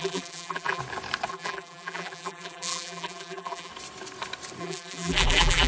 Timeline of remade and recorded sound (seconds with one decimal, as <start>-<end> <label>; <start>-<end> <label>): 0.0-0.8 remade; 0.8-1.3 recorded; 1.3-3.7 remade; 3.7-4.6 recorded; 4.6-5.7 remade